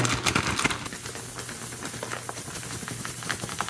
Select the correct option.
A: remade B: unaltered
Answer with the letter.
B